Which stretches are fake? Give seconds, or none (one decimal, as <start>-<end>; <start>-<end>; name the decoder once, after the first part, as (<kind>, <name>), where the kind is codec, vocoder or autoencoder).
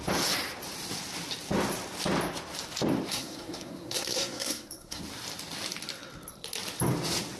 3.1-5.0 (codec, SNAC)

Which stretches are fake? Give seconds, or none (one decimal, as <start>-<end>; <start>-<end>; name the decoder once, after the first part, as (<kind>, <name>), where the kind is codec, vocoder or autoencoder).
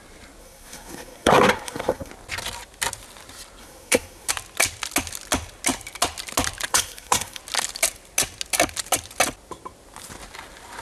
0.4-2.1 (codec, SNAC); 3.6-4.3; 6.7-7.4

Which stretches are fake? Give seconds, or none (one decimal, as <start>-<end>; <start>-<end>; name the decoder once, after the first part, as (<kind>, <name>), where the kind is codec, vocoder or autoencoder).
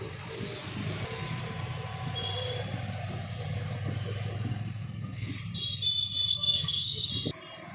4.5-5.3 (codec, SNAC); 6.3-7.1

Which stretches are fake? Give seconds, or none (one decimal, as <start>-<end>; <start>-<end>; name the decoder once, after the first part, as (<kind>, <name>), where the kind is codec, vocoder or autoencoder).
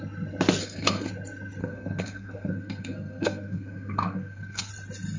0.6-1.1 (codec, SNAC); 1.6-4.7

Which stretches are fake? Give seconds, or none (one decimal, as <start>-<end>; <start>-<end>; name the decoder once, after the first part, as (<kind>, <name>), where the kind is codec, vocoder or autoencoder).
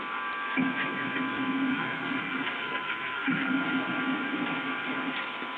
1.7-3.5 (codec, SNAC)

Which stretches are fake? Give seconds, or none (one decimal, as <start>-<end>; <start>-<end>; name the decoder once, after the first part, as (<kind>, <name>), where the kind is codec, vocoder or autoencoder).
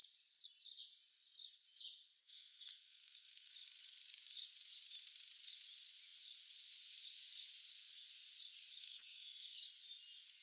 2.2-3.5 (codec, SNAC); 8.8-9.6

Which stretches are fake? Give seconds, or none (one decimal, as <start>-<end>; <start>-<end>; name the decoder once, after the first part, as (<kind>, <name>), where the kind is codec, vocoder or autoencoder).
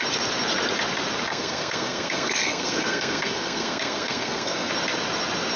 1.3-4.7 (codec, SNAC)